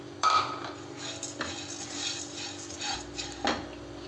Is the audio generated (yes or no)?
no